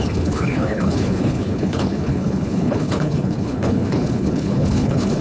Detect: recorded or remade remade